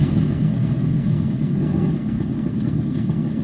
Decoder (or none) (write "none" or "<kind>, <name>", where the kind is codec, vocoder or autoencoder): codec, SNAC